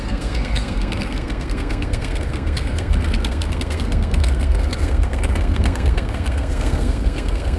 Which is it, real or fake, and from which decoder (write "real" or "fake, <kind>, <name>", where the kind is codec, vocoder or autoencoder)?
fake, codec, SNAC